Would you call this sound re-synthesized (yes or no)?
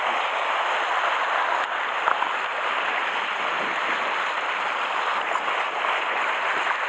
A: no